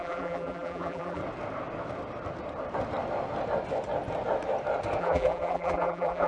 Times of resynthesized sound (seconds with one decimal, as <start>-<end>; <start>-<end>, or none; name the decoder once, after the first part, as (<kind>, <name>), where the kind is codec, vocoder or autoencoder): 0.0-1.2 (vocoder, BigVGAN v2); 5.0-6.3